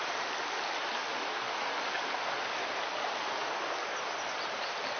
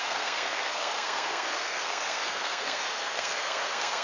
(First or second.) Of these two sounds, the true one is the first